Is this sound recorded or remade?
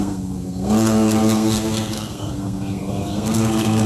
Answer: remade